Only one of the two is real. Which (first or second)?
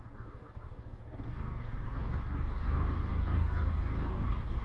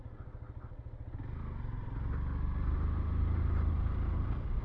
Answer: second